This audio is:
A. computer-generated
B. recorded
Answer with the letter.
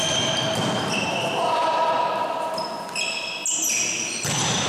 B